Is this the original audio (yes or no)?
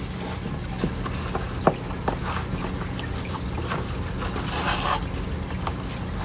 yes